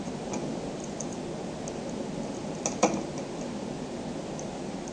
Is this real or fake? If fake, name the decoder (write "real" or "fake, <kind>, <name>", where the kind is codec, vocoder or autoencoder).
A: real